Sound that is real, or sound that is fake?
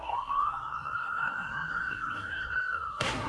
fake